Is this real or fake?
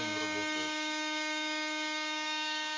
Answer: fake